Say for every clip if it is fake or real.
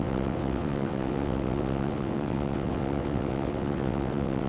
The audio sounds fake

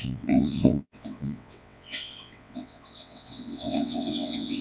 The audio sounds fake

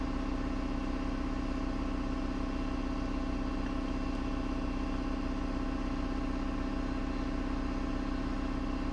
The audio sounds real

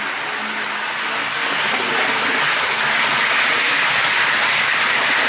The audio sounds real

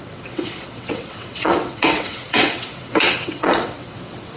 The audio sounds fake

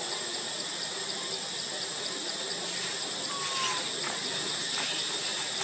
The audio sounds real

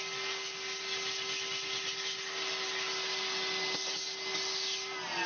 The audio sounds real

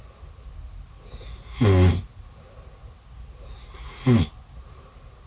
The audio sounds real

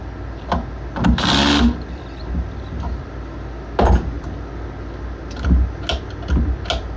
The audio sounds real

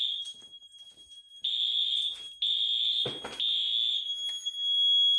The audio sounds real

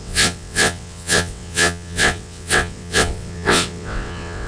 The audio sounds fake